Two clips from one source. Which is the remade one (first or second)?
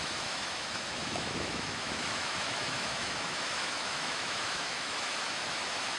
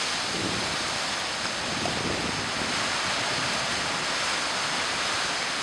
first